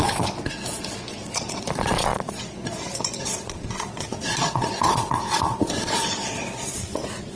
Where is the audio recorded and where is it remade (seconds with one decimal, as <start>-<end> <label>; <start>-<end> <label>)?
0.0-7.4 remade